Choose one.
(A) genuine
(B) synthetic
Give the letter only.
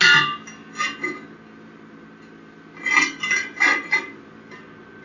A